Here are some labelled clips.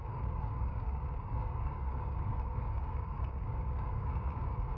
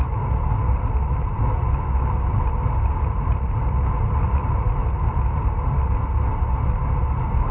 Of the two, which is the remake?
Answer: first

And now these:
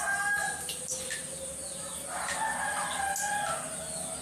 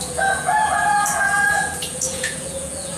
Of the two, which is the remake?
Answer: second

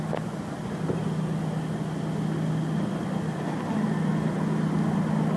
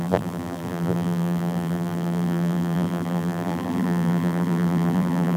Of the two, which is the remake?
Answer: second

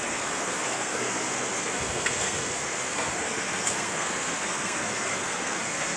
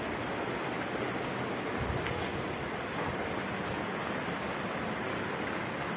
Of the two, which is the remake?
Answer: first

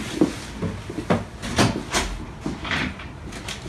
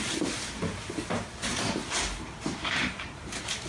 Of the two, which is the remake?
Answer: second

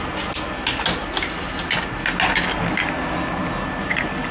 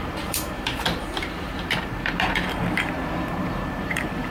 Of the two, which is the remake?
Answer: second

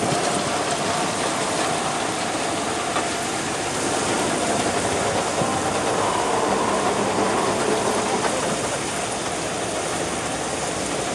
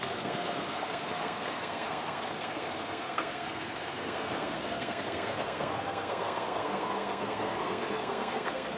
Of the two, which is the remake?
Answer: second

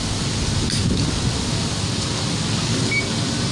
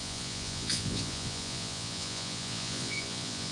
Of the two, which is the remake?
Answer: second